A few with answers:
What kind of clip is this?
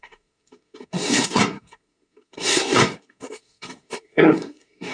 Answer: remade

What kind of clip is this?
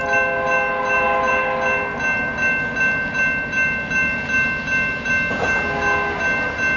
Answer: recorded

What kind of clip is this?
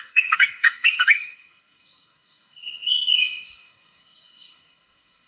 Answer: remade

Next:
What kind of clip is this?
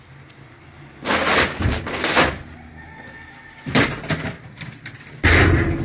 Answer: recorded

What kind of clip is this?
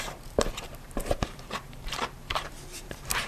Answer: remade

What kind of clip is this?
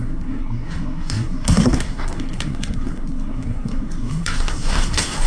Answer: remade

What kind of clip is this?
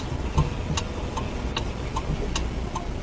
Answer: recorded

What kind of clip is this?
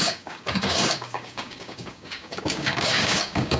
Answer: remade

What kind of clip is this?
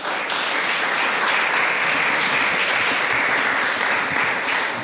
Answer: recorded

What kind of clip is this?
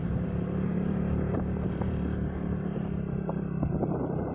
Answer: remade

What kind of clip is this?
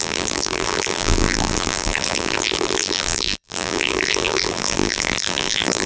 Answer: remade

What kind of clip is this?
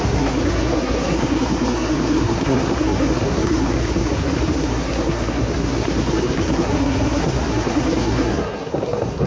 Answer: remade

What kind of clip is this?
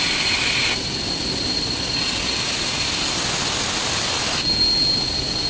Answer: recorded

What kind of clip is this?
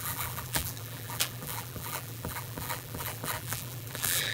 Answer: remade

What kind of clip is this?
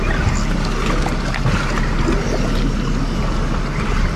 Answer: recorded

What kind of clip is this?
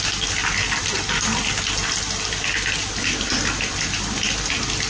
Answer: recorded